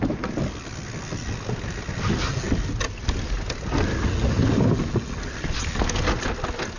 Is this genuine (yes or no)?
yes